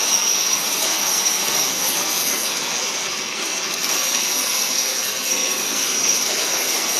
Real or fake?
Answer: fake